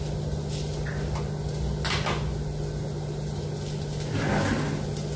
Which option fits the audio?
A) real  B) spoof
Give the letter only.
A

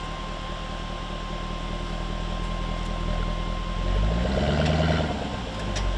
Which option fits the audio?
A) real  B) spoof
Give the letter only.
A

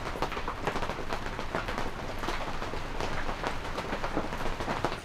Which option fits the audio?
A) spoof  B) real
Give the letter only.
B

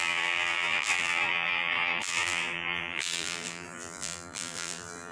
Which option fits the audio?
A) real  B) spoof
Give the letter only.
B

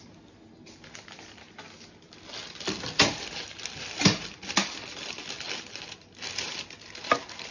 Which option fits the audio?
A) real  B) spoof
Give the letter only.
A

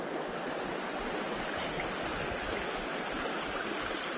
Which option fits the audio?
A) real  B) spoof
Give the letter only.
A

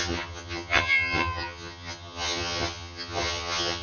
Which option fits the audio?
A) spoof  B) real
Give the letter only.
A